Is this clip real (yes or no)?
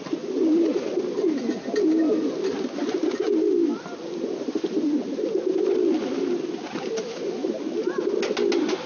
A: yes